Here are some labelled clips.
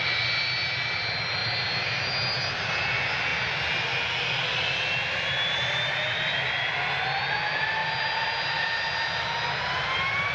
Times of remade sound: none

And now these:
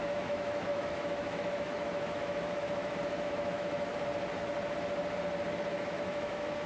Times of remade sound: 0.0-3.9 (autoencoder, DAC-VAE); 5.7-6.7

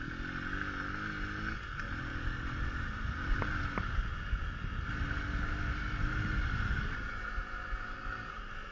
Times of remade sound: none

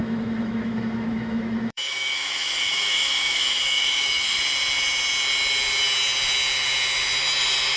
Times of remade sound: 0.0-4.4 (autoencoder, DAC-VAE)

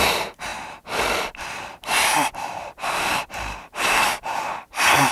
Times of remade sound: 0.0-0.5 (vocoder, BigVGAN v2); 3.6-5.1

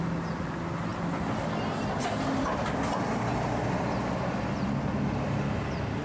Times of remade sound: none

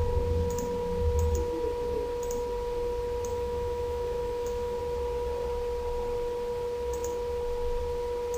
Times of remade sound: 3.3-4.8 (autoencoder, DAC-VAE)